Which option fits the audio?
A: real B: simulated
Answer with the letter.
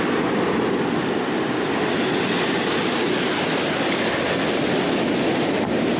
A